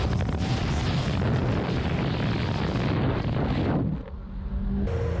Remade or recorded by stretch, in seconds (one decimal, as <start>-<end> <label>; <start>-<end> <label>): 0.0-5.2 recorded